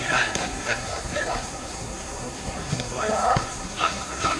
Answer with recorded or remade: remade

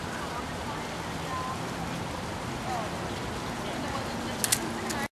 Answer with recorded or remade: recorded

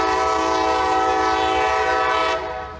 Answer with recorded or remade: recorded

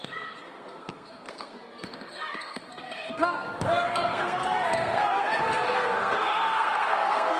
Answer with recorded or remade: remade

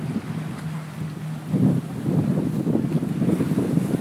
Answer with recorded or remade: recorded